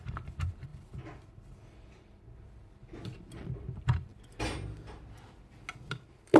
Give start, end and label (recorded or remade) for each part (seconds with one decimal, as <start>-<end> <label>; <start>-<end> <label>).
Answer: 0.0-4.1 remade; 4.1-5.9 recorded; 5.9-6.4 remade